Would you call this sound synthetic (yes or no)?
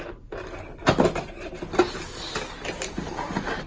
no